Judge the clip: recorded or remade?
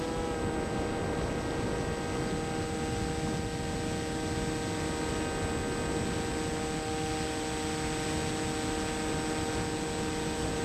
recorded